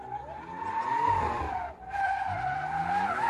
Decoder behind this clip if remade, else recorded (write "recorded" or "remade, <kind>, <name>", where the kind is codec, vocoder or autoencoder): recorded